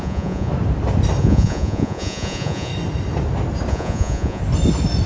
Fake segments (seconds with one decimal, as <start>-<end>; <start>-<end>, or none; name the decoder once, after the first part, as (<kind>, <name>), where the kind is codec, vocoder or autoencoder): 0.0-0.5 (vocoder, Vocos); 1.2-2.7; 3.7-4.4